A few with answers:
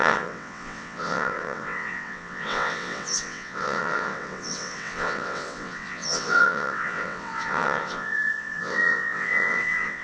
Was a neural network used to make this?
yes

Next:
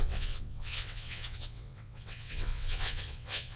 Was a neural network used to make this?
yes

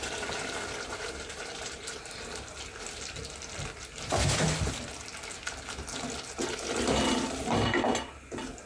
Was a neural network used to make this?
no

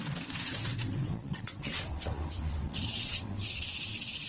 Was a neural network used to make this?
yes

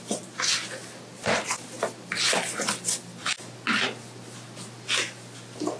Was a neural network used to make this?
no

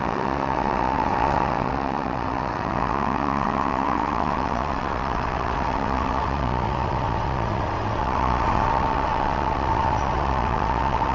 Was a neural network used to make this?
yes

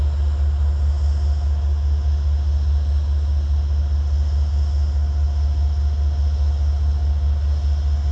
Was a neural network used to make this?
no